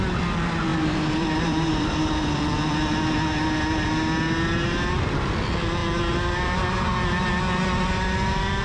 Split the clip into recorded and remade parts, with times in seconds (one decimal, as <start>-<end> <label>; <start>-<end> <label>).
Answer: 0.0-0.7 recorded; 0.7-2.4 remade; 2.4-8.6 recorded